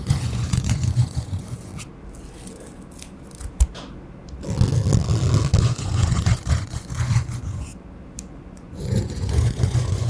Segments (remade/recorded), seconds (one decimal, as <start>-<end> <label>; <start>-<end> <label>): 0.0-1.7 remade; 1.7-5.6 recorded; 5.6-7.7 remade; 7.7-8.3 recorded; 8.3-10.1 remade